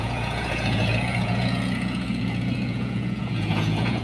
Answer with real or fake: fake